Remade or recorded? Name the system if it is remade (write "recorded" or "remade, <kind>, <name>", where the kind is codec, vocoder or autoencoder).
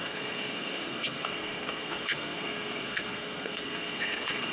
remade, codec, SNAC